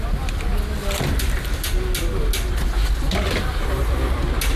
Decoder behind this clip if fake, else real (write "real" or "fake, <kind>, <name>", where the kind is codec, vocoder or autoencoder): real